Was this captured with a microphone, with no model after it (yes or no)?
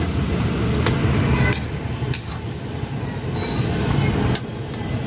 yes